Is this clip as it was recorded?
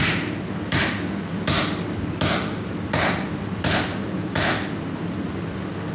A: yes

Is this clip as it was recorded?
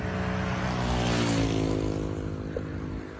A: yes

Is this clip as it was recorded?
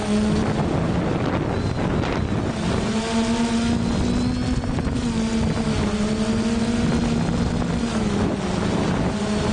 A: yes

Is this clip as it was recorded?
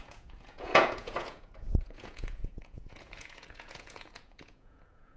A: no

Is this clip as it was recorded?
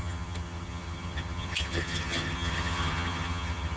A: no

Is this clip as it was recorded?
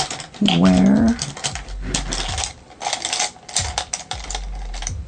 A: yes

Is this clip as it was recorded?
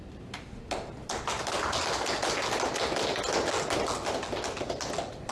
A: yes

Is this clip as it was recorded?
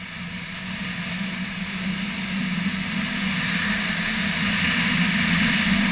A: yes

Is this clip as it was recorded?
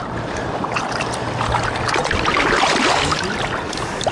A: yes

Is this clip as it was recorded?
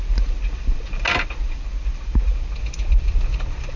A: yes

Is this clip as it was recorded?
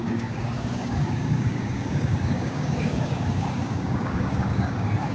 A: no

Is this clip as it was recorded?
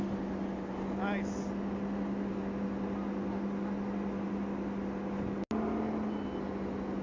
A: yes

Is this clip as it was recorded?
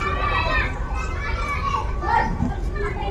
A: yes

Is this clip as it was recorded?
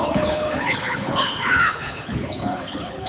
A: no